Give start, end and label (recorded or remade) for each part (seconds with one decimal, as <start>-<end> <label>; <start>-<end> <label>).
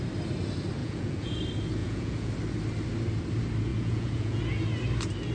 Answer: 0.0-0.8 recorded; 0.8-1.4 remade; 1.4-1.8 recorded; 1.8-2.3 remade; 2.3-3.7 recorded; 3.7-4.4 remade; 4.4-5.3 recorded